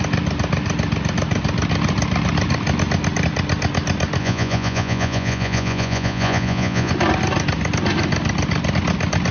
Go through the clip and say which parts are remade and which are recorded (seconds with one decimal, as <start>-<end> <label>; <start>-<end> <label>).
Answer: 0.0-4.2 recorded; 4.2-6.9 remade; 6.9-9.3 recorded